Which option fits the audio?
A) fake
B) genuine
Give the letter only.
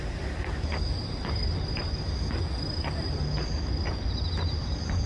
B